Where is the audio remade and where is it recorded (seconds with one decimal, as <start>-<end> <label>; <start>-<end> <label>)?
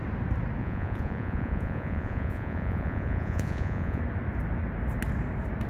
0.0-0.6 recorded; 0.6-4.0 remade; 4.0-5.7 recorded